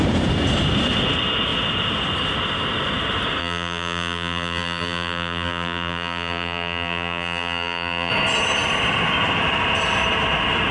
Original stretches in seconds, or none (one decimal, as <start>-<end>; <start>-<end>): 0.0-3.4; 8.1-10.7

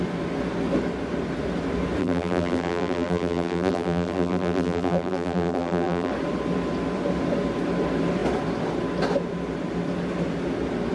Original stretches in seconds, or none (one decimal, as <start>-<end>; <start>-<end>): 0.0-2.0; 6.1-10.9

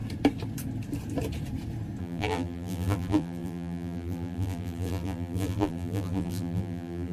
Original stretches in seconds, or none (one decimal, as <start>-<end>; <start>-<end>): 0.0-2.0